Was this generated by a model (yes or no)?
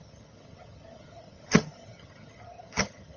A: yes